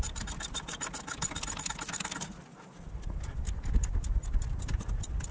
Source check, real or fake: real